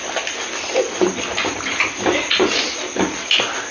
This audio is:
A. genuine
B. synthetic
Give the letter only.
A